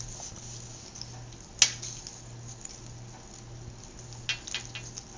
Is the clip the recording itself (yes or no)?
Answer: yes